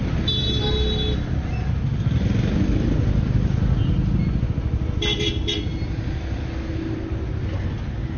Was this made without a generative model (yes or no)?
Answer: yes